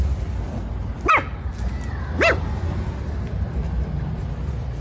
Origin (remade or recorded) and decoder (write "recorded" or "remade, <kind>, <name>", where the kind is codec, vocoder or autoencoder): recorded